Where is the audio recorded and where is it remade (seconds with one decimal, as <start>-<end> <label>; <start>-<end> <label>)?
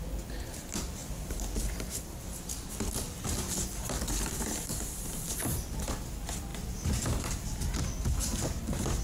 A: 0.0-1.0 recorded; 1.0-6.0 remade; 6.0-6.5 recorded; 6.5-7.8 remade; 7.8-9.0 recorded